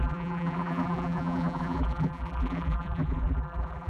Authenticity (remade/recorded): remade